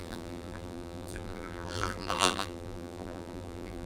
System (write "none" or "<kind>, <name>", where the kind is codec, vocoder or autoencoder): vocoder, BigVGAN v2